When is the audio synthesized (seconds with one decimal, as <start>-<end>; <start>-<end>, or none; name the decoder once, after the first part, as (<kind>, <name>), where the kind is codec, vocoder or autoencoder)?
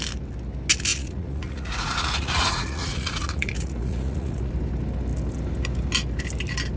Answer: 0.9-4.5 (vocoder, Vocos)